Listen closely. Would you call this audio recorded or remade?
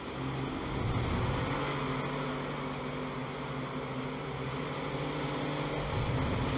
recorded